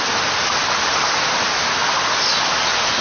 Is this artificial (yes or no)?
no